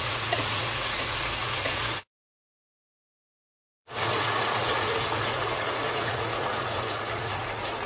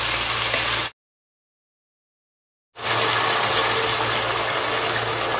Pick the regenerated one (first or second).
first